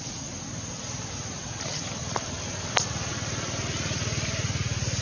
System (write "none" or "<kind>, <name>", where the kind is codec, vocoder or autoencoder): none